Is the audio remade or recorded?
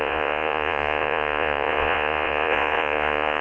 remade